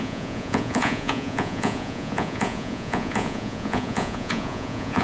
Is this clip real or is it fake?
fake